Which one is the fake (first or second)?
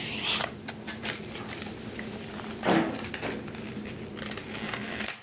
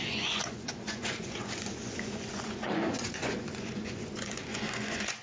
second